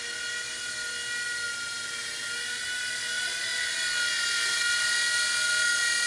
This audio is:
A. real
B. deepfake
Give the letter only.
A